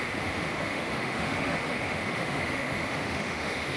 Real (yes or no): no